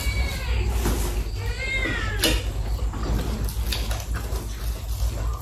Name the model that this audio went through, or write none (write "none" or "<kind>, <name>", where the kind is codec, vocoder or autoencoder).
none